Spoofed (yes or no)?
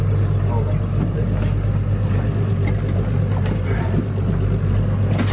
no